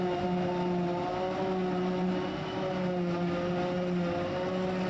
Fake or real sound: real